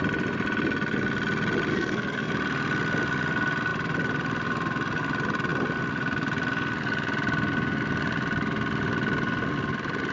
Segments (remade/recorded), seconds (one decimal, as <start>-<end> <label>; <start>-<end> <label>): 0.0-1.7 recorded; 1.7-2.3 remade; 2.3-10.1 recorded